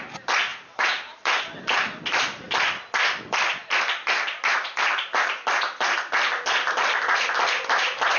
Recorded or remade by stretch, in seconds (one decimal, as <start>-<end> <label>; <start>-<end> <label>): 0.0-0.5 recorded; 0.5-1.4 remade; 1.4-8.2 recorded